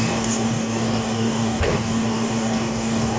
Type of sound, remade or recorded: remade